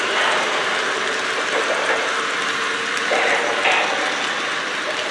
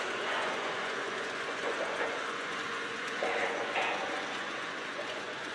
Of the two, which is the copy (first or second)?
second